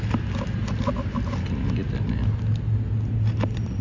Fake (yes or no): no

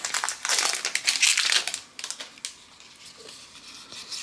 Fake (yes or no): no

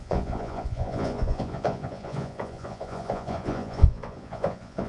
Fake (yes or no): yes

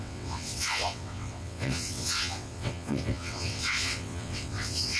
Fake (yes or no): yes